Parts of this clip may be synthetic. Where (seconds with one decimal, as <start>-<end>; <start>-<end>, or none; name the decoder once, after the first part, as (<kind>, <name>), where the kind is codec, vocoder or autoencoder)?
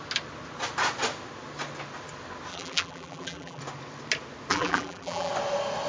2.5-3.6 (vocoder, BigVGAN v2); 4.5-5.3